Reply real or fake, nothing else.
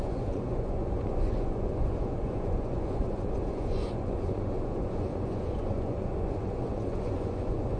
fake